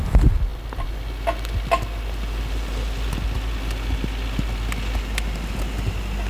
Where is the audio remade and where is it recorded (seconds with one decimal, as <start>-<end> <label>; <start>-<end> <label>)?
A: 0.0-6.3 recorded

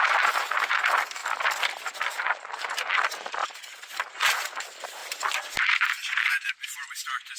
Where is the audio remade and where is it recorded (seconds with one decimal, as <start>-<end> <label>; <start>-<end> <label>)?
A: 0.0-1.2 remade; 1.2-1.8 recorded; 1.8-5.0 remade; 5.0-5.6 recorded; 5.6-7.4 remade

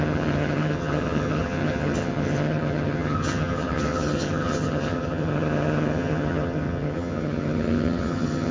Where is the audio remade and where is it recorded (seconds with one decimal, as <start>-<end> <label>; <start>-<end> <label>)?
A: 0.0-8.5 remade

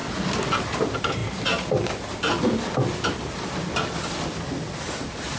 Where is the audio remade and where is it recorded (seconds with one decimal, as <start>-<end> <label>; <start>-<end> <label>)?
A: 0.0-5.4 recorded

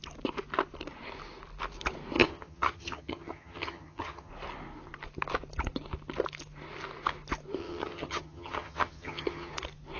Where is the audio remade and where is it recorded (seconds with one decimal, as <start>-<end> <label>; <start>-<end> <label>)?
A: 0.0-2.2 recorded; 2.2-4.3 remade; 4.3-7.6 recorded; 7.6-9.5 remade; 9.5-10.0 recorded

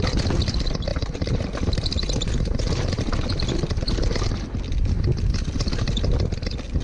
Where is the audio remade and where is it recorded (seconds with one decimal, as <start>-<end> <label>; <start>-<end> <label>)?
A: 0.0-0.9 recorded; 0.9-3.0 remade; 3.0-6.8 recorded

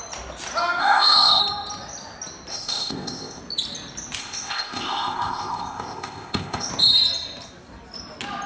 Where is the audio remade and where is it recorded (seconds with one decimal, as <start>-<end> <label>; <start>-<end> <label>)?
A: 0.0-0.8 recorded; 0.8-1.4 remade; 1.4-2.5 recorded; 2.5-3.4 remade; 3.4-4.2 recorded; 4.2-6.7 remade; 6.7-8.5 recorded

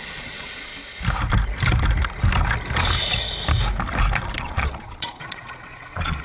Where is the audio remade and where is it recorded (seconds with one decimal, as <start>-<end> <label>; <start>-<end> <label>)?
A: 0.0-0.7 remade; 0.7-4.4 recorded; 4.4-6.2 remade